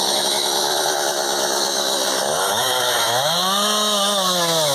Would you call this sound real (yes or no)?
no